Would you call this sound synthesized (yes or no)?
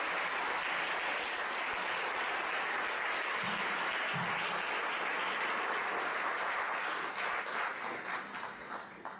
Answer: no